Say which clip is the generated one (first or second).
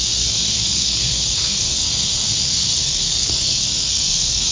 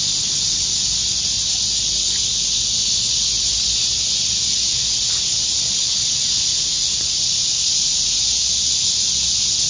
first